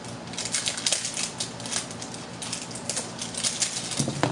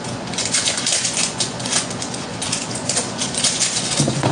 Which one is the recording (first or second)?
first